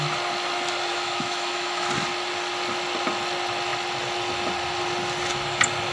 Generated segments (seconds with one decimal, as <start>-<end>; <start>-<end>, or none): 0.9-1.9